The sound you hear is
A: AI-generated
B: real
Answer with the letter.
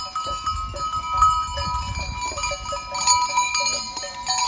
B